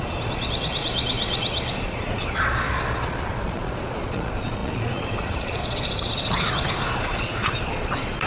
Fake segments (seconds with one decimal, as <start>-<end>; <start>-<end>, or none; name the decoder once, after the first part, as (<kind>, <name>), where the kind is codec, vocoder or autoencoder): 0.0-8.3 (vocoder, Vocos)